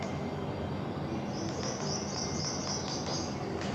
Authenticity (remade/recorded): recorded